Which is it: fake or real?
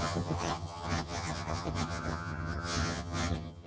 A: fake